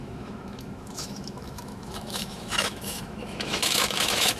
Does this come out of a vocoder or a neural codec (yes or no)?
yes